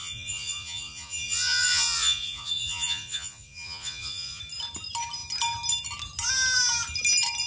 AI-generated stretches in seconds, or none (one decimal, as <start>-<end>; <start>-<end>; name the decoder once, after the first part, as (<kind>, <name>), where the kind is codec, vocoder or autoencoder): 0.0-4.4 (vocoder, Vocos)